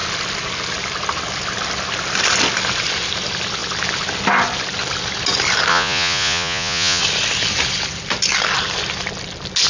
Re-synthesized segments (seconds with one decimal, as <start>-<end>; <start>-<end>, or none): 5.7-7.0